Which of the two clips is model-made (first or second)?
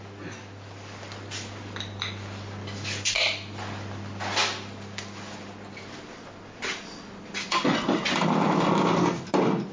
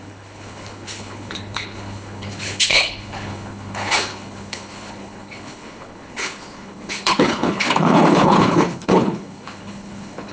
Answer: second